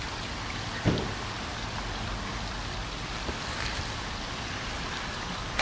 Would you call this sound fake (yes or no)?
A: no